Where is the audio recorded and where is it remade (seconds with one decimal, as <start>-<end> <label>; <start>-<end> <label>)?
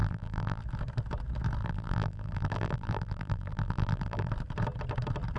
0.0-0.6 remade; 0.6-1.6 recorded; 1.6-4.3 remade; 4.3-5.4 recorded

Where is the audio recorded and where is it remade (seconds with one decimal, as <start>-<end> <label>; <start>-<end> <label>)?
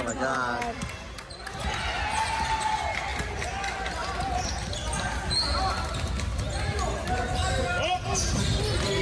0.0-9.0 recorded